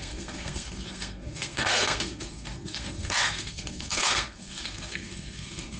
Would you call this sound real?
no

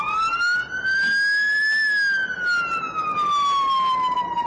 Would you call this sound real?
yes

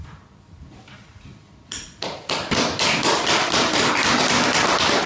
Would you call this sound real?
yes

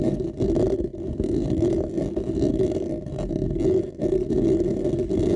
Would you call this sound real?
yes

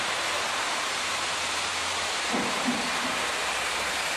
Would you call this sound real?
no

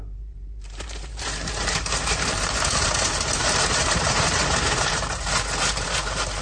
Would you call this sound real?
no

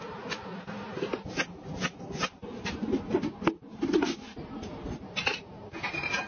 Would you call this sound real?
yes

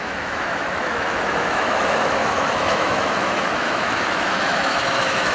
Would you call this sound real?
no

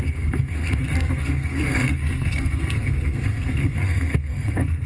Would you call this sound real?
no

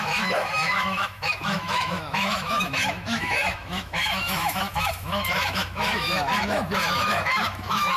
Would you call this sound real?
no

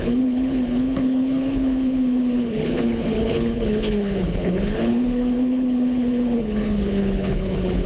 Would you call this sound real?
no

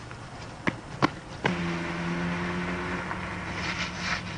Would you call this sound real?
yes